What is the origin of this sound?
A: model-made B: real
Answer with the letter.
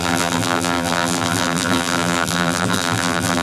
A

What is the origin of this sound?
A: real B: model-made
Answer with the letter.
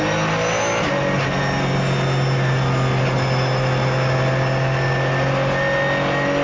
A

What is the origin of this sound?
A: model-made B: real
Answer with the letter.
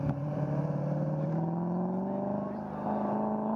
A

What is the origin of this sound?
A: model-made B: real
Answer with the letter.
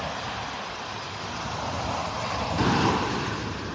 B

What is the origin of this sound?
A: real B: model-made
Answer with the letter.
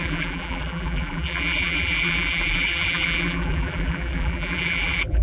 B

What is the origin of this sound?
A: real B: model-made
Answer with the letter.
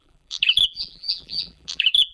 B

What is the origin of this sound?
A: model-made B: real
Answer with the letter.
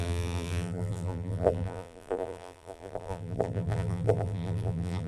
A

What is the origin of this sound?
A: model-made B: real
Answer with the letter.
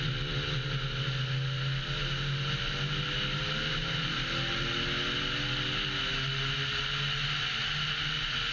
B